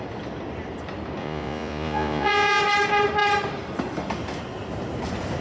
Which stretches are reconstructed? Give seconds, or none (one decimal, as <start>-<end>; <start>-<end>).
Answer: 1.2-2.6